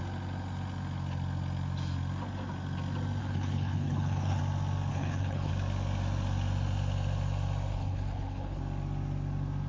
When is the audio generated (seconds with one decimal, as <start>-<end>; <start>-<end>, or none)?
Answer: 3.2-4.4; 4.9-5.5; 7.7-8.6